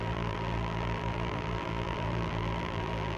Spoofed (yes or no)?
yes